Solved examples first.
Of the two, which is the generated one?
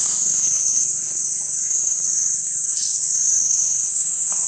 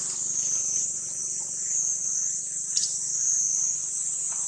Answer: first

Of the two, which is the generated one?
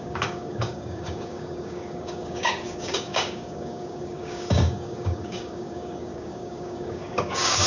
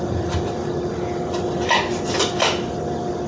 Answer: first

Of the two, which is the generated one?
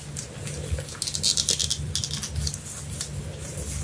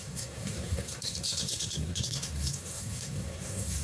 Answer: second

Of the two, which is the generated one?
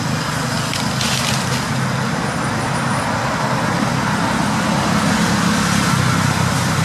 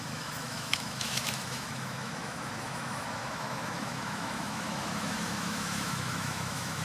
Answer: second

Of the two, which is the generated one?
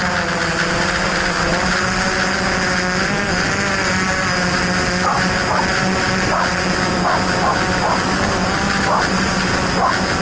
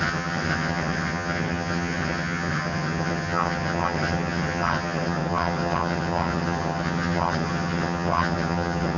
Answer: second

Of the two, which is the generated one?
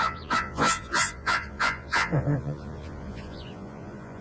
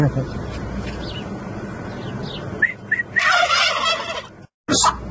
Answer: first